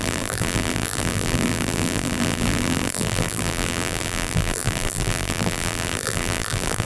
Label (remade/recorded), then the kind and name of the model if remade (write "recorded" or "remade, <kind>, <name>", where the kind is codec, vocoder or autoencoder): remade, vocoder, BigVGAN v2